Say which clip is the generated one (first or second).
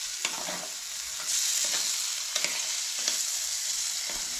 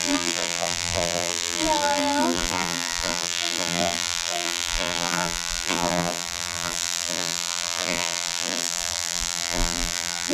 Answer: second